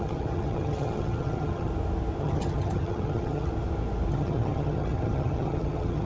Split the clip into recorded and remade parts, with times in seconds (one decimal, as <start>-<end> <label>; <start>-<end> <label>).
0.0-1.7 remade; 1.7-2.2 recorded; 2.2-3.5 remade; 3.5-4.1 recorded; 4.1-6.1 remade